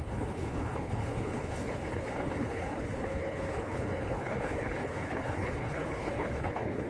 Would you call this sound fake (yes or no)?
yes